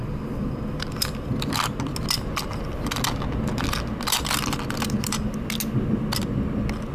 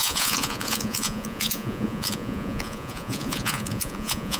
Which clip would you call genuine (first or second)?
first